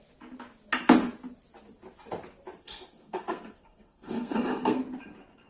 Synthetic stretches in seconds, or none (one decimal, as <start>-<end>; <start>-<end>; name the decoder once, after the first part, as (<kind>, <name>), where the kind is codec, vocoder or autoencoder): 2.6-4.8 (codec, SNAC)

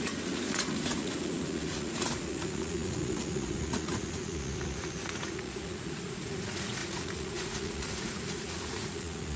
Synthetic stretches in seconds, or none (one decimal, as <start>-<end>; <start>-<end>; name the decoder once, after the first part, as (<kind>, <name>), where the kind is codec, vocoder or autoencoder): 0.0-9.4 (vocoder, Vocos)

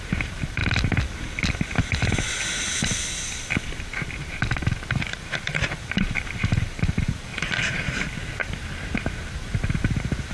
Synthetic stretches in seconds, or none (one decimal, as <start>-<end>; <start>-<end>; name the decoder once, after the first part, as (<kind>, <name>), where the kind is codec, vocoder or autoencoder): 0.0-0.6 (vocoder, BigVGAN v2); 4.9-10.3

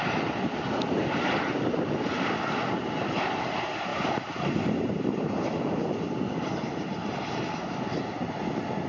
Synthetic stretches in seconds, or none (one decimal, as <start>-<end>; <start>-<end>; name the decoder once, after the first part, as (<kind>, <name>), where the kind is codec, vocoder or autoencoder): 3.9-5.3 (vocoder, BigVGAN v2)

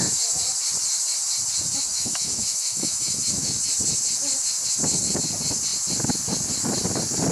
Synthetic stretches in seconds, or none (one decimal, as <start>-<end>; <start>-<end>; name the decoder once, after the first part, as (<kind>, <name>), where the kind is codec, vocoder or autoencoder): 1.9-3.6 (autoencoder, DAC-VAE)

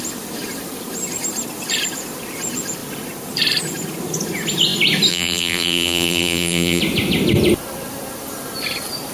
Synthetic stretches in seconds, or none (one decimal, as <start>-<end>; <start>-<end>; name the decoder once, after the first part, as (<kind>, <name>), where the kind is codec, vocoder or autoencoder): 5.1-6.8 (vocoder, BigVGAN v2)